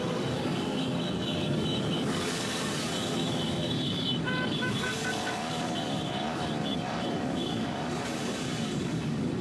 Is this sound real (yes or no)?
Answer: no